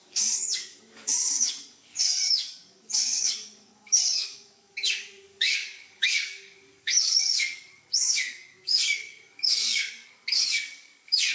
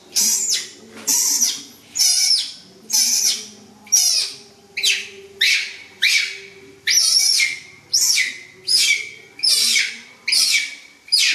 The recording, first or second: second